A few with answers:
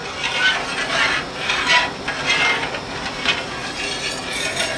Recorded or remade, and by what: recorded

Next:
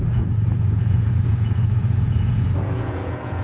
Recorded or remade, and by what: remade, vocoder, Vocos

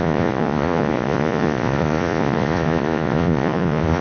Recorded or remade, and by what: remade, vocoder, Vocos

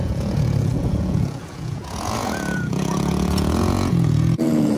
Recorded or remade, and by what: remade, vocoder, Vocos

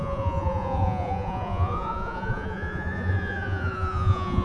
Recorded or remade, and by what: remade, vocoder, Vocos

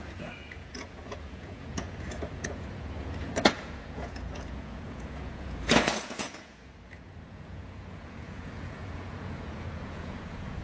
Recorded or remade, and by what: remade, vocoder, Vocos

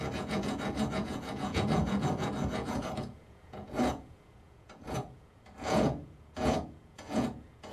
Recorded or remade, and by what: remade, vocoder, Vocos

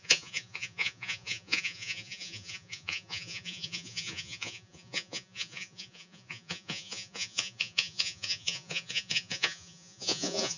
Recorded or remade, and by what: remade, vocoder, Vocos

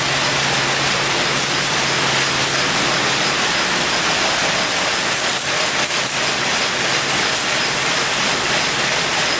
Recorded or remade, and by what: recorded